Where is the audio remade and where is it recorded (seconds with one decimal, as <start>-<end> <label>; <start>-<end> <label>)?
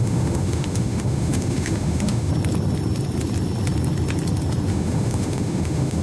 0.0-2.3 remade; 2.3-4.7 recorded; 4.7-6.0 remade